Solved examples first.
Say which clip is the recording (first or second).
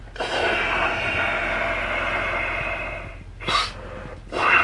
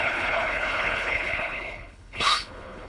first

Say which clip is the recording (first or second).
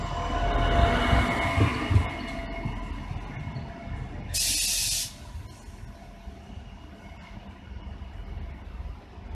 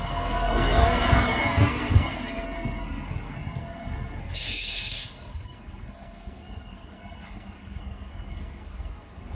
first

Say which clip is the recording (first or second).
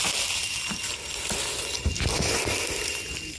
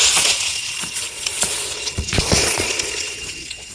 first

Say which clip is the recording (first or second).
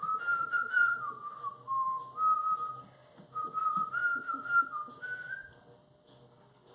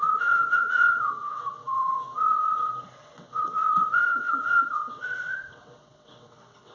first